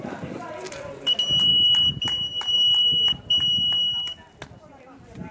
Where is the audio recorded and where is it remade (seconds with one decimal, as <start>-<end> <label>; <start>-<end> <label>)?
0.0-1.5 recorded; 1.5-3.4 remade; 3.4-5.3 recorded